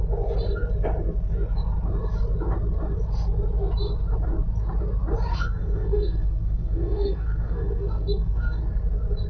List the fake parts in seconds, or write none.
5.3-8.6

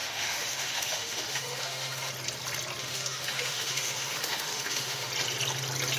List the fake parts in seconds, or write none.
0.0-2.1; 2.8-5.1

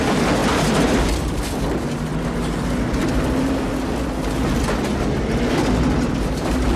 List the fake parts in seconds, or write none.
0.4-1.5; 4.9-5.5

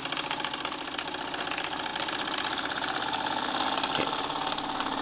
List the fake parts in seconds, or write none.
none

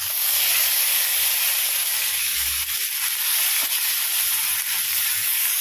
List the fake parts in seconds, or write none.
0.0-1.1; 1.6-2.6; 5.0-5.6

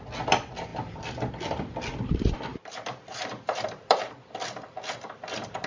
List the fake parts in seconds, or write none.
2.5-4.1

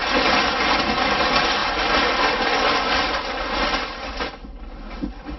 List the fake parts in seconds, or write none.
none

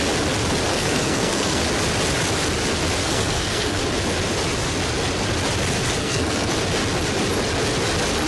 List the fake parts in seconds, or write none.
0.7-1.6; 3.0-3.8; 6.0-6.5